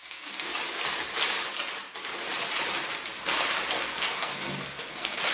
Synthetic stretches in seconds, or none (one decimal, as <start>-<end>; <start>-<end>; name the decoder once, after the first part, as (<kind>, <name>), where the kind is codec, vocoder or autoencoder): 0.0-0.5 (codec, SNAC); 3.7-5.3

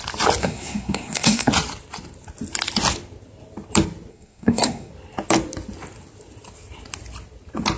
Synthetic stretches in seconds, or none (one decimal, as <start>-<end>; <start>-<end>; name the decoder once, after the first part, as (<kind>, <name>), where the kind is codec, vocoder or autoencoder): 0.4-1.5 (codec, SNAC); 4.1-4.9

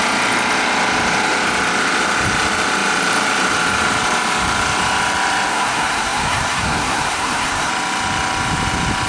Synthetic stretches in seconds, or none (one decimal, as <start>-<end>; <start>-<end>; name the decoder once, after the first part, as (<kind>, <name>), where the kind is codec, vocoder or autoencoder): 5.5-7.7 (codec, SNAC)

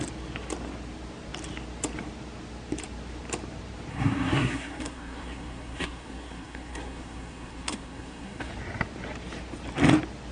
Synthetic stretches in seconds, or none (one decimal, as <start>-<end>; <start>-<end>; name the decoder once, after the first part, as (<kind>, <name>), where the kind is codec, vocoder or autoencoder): 3.9-8.5 (codec, SNAC)